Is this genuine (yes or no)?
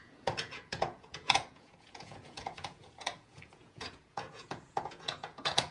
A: no